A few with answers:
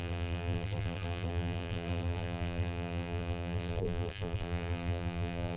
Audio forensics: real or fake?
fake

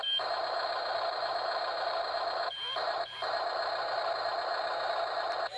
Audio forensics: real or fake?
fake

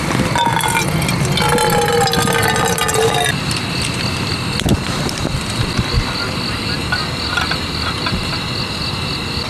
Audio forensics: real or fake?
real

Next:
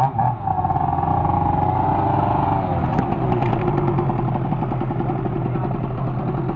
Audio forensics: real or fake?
real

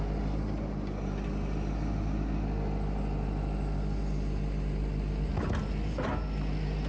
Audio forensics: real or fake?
real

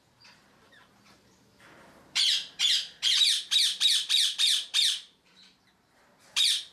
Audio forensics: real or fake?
fake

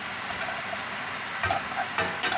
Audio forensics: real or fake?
fake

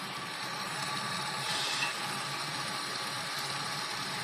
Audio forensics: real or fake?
real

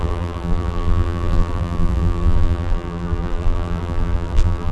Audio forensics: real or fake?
fake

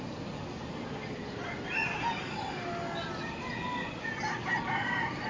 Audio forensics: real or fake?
real